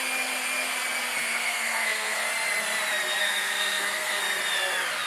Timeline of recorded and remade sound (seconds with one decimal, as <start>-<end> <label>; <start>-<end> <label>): 0.0-1.2 recorded; 1.2-2.3 remade; 2.3-3.2 recorded; 3.2-4.2 remade; 4.2-5.1 recorded